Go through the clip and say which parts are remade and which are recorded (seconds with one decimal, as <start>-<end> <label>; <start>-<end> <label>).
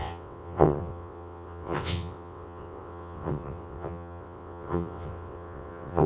0.0-6.1 remade